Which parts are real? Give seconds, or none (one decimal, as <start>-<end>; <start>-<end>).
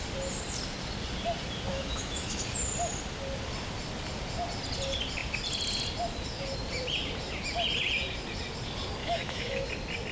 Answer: 0.0-1.7; 2.4-9.0; 9.7-10.1